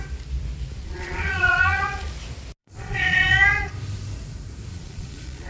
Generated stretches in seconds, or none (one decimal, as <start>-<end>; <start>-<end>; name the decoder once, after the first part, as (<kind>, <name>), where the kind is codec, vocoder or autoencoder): 0.8-2.1 (vocoder, Vocos); 2.6-3.7; 4.7-5.5

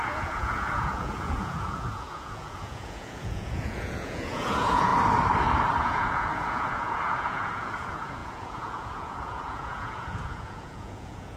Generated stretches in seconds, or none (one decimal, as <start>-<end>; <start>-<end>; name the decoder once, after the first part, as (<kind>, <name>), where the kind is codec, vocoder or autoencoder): 0.0-4.9 (vocoder, Vocos); 5.8-11.4